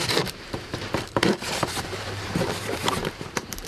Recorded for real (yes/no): no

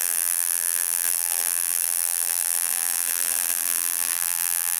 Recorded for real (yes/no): no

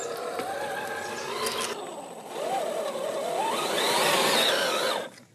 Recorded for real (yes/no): yes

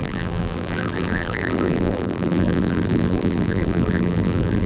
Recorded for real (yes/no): no